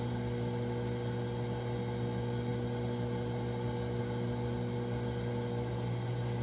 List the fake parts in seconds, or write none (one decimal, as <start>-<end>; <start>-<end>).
none